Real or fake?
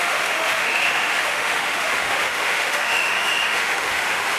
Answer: fake